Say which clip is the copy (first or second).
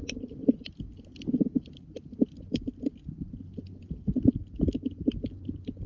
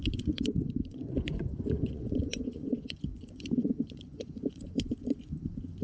second